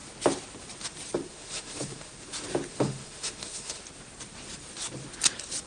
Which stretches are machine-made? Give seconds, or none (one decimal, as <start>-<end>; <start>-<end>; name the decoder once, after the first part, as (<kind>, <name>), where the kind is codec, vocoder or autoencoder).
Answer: 1.3-2.1 (autoencoder, DAC-VAE); 2.7-3.8